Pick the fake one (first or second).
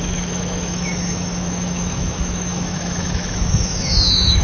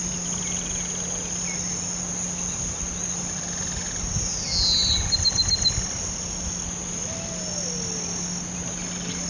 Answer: first